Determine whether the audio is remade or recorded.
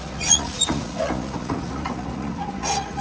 remade